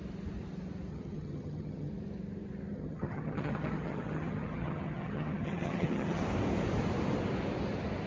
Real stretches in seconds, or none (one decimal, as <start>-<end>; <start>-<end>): 0.0-0.9; 1.9-2.7; 6.2-8.1